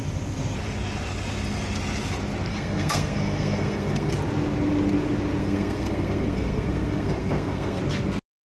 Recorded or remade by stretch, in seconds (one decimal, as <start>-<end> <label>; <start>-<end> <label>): 0.0-2.5 recorded; 2.5-4.1 remade; 4.1-5.4 recorded; 5.4-7.8 remade; 7.8-8.4 recorded